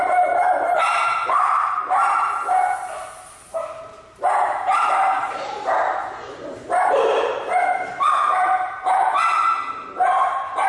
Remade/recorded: remade